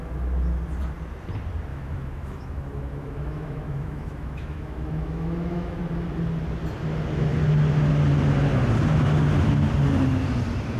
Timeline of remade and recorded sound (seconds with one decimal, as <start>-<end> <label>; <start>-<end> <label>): 0.0-1.7 recorded; 1.7-5.8 remade; 5.8-10.8 recorded